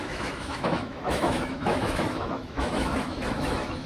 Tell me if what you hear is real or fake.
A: fake